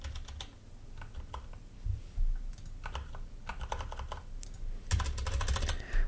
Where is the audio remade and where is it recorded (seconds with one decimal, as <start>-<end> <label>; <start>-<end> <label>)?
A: 0.0-6.1 recorded